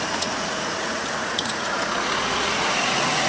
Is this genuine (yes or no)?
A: no